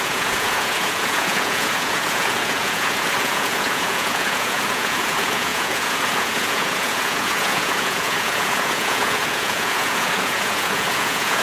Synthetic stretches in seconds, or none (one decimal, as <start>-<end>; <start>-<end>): 0.0-11.4